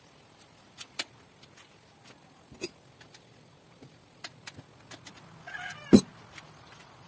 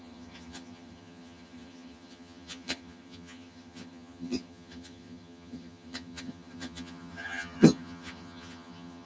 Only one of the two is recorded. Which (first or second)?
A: first